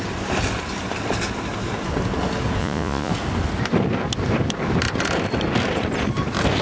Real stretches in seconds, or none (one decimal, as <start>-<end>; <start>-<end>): 0.0-2.6; 3.1-6.6